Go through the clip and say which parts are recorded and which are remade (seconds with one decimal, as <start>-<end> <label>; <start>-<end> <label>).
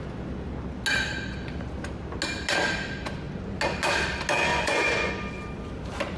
0.0-4.5 recorded; 4.5-5.1 remade; 5.1-6.2 recorded